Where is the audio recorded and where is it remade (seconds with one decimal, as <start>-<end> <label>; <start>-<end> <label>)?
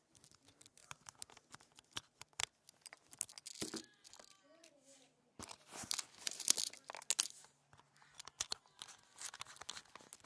0.0-10.3 recorded